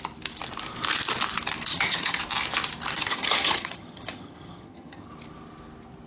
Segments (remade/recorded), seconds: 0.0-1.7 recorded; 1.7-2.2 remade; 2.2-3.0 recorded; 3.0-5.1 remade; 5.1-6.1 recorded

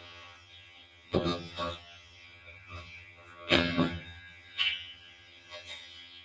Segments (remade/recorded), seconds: 0.0-6.2 remade

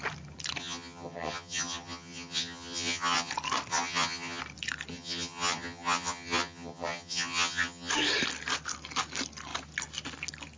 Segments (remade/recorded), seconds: 0.0-0.6 recorded; 0.6-3.3 remade; 3.3-3.7 recorded; 3.7-4.4 remade; 4.4-4.9 recorded; 4.9-7.9 remade; 7.9-10.6 recorded

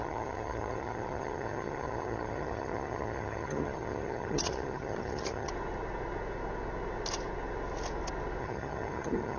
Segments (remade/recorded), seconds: 0.0-5.5 remade; 5.5-8.4 recorded; 8.4-9.4 remade

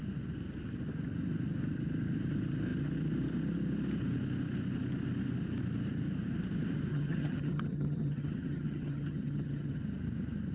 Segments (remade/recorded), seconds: 0.0-6.9 recorded; 6.9-9.8 remade; 9.8-10.5 recorded